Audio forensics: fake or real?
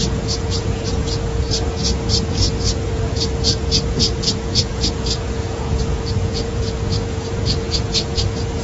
fake